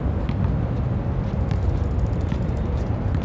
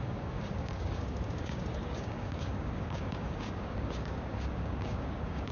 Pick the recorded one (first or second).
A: first